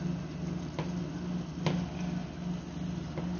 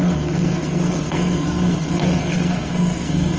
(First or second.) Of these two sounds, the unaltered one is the first